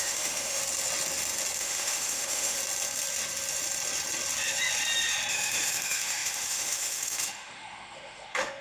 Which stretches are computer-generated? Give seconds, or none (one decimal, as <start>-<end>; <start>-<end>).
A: 0.0-0.6; 1.6-2.6; 5.3-8.6